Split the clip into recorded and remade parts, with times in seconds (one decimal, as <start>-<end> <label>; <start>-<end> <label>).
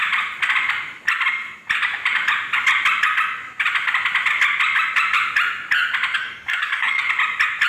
0.0-6.2 recorded; 6.2-7.0 remade; 7.0-7.7 recorded